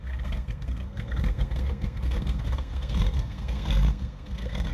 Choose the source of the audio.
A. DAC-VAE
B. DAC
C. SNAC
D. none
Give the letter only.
C